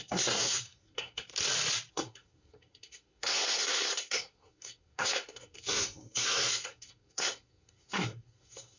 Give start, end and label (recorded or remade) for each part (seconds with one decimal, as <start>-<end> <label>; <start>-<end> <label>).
0.0-1.3 remade; 1.3-1.9 recorded; 1.9-8.8 remade